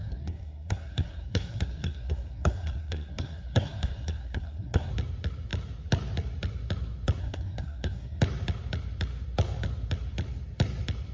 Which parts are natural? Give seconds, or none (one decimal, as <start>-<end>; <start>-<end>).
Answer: 4.9-7.2; 8.2-11.1